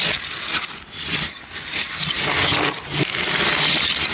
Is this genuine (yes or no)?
yes